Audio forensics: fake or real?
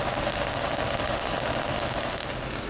real